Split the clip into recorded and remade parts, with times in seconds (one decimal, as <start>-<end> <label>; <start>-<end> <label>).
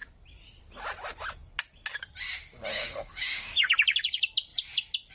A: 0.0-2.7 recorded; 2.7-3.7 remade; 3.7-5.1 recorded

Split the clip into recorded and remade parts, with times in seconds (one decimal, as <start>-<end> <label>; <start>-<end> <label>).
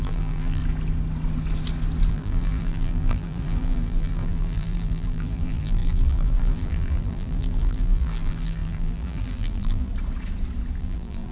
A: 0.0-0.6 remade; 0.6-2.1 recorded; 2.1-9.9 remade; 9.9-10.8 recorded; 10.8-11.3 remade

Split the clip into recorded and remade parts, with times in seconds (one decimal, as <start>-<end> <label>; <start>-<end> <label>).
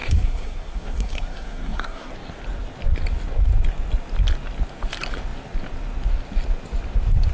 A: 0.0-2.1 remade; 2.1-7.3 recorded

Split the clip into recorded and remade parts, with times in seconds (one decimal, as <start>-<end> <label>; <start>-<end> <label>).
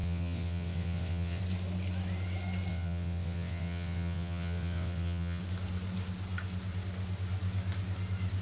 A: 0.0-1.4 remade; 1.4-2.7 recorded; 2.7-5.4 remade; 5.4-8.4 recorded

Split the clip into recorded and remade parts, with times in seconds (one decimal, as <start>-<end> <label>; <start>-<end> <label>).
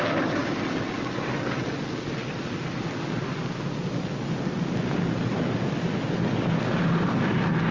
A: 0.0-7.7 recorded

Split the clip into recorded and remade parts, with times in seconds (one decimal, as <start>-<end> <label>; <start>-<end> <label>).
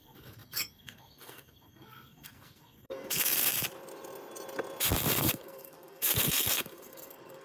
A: 0.0-3.5 remade; 3.5-5.1 recorded; 5.1-7.4 remade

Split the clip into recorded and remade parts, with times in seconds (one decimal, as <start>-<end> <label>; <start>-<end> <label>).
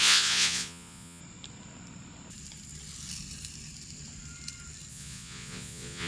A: 0.0-1.2 remade; 1.2-4.9 recorded; 4.9-6.1 remade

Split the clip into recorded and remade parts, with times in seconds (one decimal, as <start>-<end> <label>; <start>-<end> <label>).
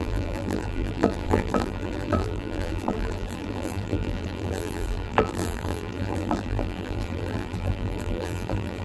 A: 0.0-8.8 remade